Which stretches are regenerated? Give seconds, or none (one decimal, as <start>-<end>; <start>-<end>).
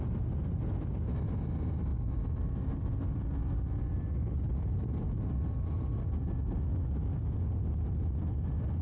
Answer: 1.9-6.2